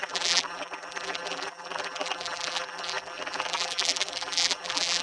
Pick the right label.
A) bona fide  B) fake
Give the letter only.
B